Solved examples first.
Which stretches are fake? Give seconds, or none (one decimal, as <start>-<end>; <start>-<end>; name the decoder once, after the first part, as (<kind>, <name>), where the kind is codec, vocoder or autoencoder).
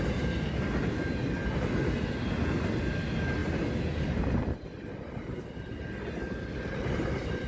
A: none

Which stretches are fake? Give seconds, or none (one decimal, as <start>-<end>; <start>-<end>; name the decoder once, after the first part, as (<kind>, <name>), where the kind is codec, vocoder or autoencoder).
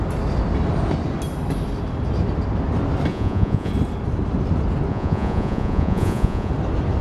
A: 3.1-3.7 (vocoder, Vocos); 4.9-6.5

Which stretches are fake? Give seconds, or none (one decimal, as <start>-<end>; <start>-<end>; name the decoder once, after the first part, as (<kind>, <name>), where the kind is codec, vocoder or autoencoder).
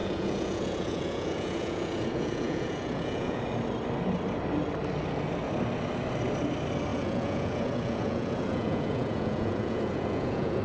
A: 0.0-3.4 (vocoder, Vocos); 6.9-10.6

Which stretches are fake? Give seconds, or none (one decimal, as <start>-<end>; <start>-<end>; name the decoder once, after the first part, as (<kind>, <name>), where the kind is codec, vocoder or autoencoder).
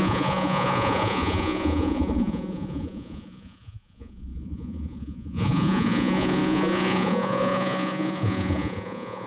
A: 0.0-9.3 (vocoder, Vocos)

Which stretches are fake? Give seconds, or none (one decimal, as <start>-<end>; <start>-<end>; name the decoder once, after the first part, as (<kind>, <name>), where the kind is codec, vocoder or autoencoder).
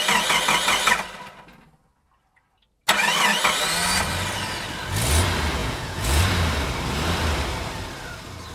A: 5.6-6.2 (vocoder, Vocos)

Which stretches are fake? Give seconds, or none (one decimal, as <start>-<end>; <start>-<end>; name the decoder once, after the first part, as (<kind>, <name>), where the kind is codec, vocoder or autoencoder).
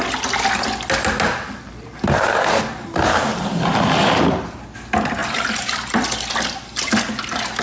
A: none